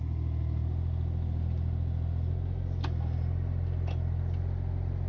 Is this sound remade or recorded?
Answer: recorded